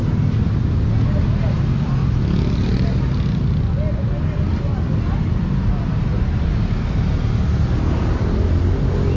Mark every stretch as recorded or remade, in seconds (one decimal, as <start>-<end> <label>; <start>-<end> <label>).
0.0-9.2 recorded